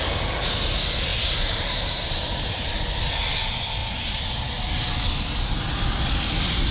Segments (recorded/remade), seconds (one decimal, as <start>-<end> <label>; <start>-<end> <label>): 0.0-1.1 recorded; 1.1-2.7 remade; 2.7-3.8 recorded; 3.8-4.5 remade; 4.5-6.7 recorded